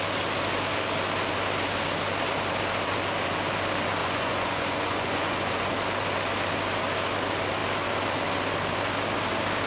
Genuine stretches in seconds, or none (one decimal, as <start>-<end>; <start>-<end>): 0.0-4.0; 5.7-9.7